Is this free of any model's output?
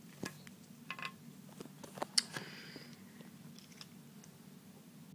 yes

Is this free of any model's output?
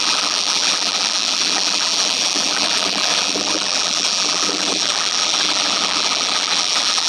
no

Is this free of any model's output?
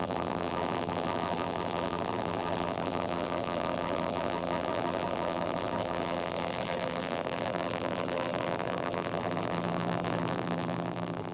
no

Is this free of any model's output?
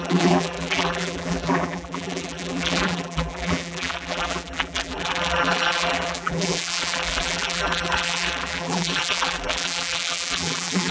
no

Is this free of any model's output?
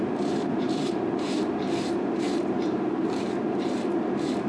no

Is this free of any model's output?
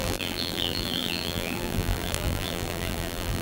no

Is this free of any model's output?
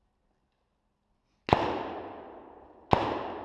yes